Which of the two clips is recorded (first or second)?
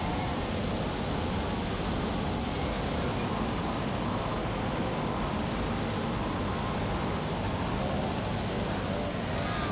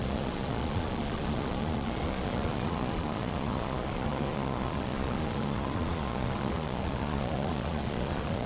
first